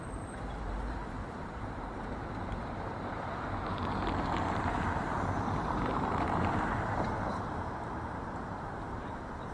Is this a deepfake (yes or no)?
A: yes